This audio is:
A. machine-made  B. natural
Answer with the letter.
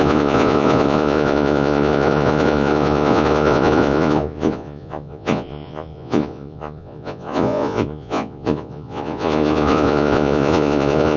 A